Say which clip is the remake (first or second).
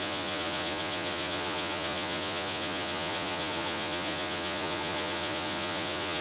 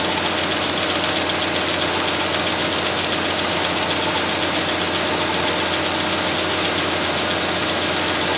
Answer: first